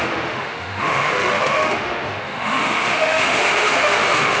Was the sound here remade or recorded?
remade